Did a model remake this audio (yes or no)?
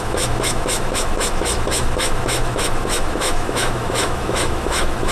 yes